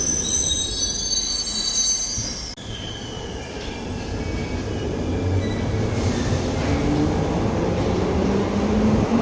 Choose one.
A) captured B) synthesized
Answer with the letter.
A